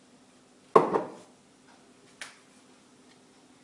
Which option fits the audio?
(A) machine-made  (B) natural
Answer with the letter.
B